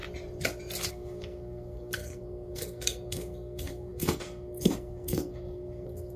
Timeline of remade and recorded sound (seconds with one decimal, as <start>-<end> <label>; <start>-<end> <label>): 0.0-0.9 recorded; 0.9-6.2 remade